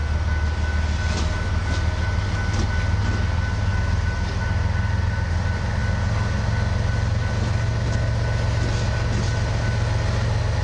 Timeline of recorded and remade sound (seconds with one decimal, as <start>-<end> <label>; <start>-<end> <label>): 0.0-10.6 recorded